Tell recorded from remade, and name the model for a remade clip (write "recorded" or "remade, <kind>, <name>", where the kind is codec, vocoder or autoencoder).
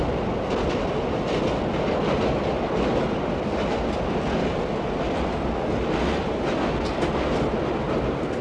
recorded